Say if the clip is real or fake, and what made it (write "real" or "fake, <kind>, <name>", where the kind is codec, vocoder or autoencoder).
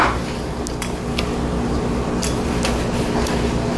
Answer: real